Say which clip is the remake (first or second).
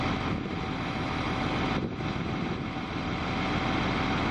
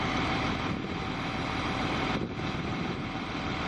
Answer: second